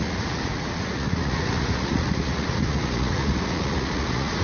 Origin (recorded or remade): remade